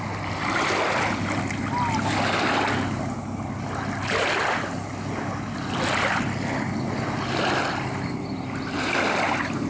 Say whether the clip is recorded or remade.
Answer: recorded